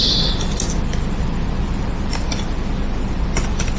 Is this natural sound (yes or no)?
yes